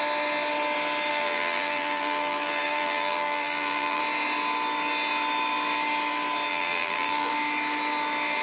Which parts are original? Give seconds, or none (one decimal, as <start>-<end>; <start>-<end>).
0.0-1.1; 4.0-6.5; 7.3-8.4